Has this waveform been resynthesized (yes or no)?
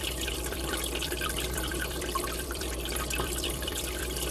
yes